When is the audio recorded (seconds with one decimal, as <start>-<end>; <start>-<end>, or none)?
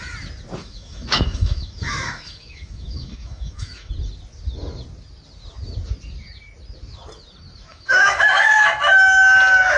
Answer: 0.0-0.6; 3.9-7.7; 8.8-9.8